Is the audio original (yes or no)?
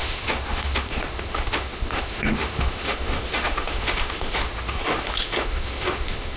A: no